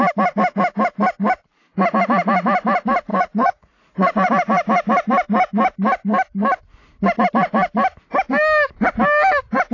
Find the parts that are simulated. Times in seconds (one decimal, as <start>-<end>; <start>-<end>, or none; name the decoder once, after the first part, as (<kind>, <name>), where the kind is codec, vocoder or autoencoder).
3.1-4.3 (vocoder, Vocos)